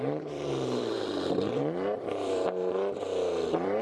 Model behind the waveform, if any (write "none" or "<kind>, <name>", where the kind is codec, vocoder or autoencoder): vocoder, BigVGAN v2